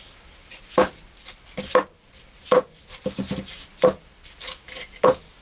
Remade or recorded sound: recorded